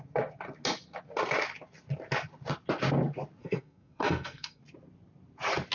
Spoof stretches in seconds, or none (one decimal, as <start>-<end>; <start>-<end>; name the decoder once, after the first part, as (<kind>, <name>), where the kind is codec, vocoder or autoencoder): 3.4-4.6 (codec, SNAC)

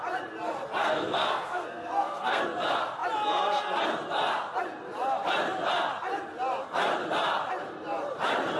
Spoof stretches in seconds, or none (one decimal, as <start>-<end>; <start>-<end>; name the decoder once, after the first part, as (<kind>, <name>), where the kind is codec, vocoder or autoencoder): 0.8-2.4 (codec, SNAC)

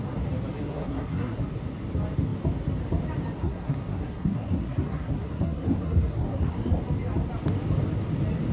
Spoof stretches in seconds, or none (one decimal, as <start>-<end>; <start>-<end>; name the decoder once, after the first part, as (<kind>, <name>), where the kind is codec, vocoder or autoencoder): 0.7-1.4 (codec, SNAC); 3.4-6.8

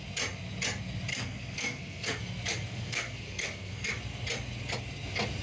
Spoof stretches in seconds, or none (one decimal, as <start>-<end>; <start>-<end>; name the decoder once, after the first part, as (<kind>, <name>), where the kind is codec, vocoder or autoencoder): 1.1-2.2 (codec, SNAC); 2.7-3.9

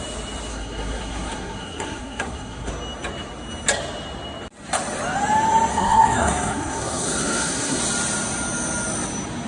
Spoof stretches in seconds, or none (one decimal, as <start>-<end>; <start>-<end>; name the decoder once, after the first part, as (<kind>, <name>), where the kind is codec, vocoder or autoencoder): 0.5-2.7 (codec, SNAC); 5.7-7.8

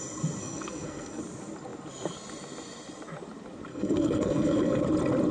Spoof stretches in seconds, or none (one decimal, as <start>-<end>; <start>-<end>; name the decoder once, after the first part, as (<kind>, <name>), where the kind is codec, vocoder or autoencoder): 0.4-1.2 (codec, SNAC); 3.7-4.8